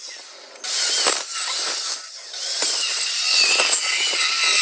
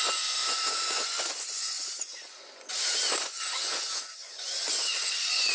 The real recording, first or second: first